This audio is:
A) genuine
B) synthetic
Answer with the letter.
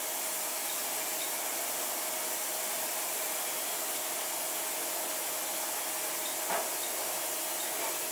A